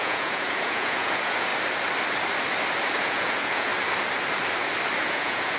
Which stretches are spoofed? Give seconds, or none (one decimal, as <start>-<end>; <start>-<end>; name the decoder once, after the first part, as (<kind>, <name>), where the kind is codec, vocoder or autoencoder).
0.0-1.5 (vocoder, Vocos); 3.0-3.7; 5.0-5.6